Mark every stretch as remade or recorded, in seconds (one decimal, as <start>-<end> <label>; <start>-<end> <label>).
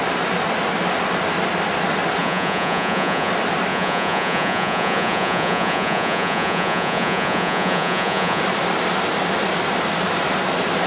0.0-2.2 recorded; 2.2-3.3 remade; 3.3-3.7 recorded; 3.7-8.4 remade; 8.4-10.9 recorded